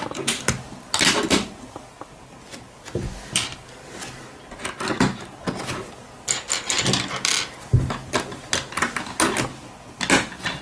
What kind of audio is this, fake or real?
real